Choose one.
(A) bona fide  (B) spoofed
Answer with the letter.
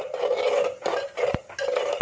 A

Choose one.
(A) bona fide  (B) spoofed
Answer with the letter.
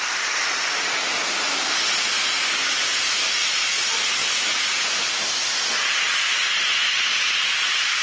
A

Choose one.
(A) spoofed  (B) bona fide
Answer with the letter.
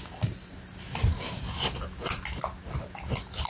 B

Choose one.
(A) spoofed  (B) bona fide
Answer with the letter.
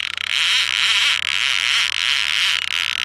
B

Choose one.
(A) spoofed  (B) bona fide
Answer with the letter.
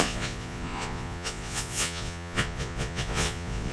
A